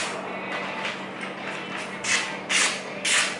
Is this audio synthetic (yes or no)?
no